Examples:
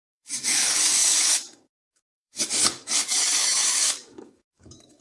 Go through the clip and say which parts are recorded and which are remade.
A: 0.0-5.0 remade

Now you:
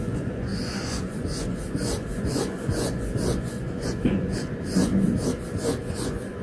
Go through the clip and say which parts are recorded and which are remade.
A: 0.0-4.9 remade; 4.9-5.8 recorded; 5.8-6.4 remade

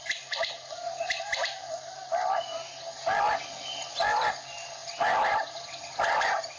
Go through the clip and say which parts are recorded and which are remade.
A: 0.0-6.6 recorded

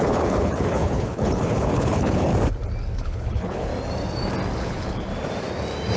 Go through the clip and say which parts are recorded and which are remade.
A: 0.0-2.3 remade; 2.3-2.8 recorded; 2.8-3.7 remade; 3.7-4.6 recorded; 4.6-5.1 remade; 5.1-6.0 recorded

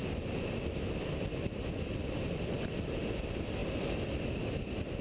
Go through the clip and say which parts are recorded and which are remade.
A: 0.0-5.0 recorded

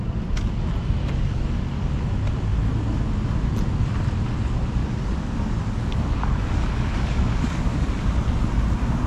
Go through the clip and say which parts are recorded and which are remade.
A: 0.0-1.0 recorded; 1.0-1.9 remade; 1.9-4.8 recorded; 4.8-7.9 remade; 7.9-9.1 recorded